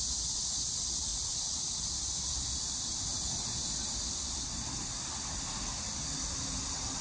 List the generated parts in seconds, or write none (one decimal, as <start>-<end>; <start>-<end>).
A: 1.1-5.0